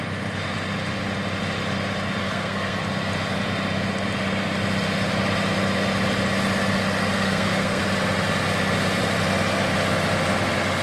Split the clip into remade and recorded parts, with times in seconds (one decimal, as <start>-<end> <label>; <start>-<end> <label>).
0.0-2.2 recorded; 2.2-2.8 remade; 2.8-7.0 recorded; 7.0-7.8 remade; 7.8-10.8 recorded